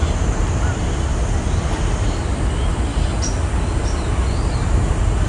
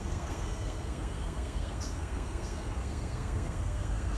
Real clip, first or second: first